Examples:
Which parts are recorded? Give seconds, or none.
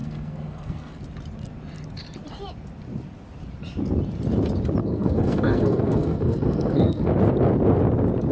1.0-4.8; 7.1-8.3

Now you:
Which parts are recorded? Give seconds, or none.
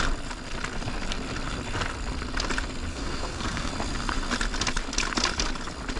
0.0-2.9; 3.7-6.0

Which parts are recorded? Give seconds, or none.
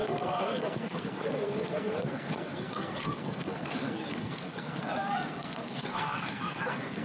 none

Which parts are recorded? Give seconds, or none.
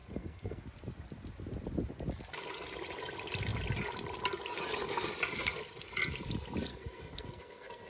0.6-6.7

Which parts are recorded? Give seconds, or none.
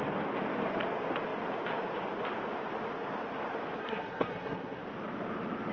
0.0-3.8; 4.8-5.7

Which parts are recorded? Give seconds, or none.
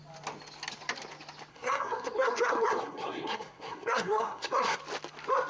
0.0-1.5; 4.8-5.5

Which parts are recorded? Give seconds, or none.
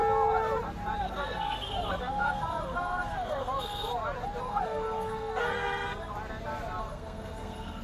0.0-1.0; 3.9-4.4; 6.1-6.8